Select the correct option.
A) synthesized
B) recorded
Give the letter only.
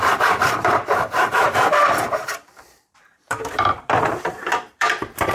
A